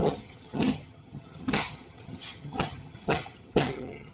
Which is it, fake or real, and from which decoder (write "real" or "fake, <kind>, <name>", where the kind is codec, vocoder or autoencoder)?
fake, vocoder, HiFi-GAN